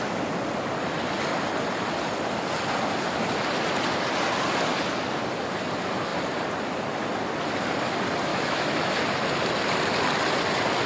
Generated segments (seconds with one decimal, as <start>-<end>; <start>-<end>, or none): 8.3-8.9